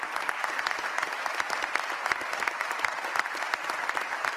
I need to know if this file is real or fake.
real